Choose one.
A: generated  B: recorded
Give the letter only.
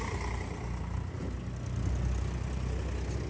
B